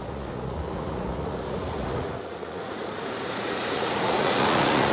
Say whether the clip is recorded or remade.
remade